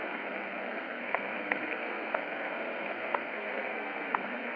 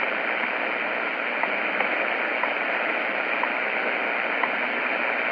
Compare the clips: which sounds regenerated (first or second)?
first